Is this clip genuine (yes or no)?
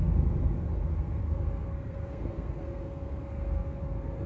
no